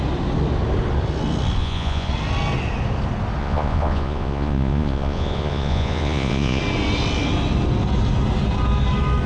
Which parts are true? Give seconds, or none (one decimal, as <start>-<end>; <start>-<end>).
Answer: 0.0-1.6; 2.1-3.4; 6.6-9.3